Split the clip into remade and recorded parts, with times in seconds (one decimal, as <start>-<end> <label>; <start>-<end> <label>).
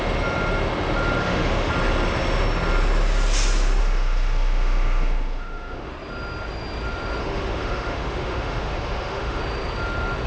0.0-1.2 recorded; 1.2-1.7 remade; 1.7-3.8 recorded; 3.8-5.9 remade; 5.9-7.2 recorded; 7.2-9.4 remade; 9.4-10.3 recorded